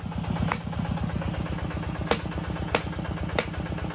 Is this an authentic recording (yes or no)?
yes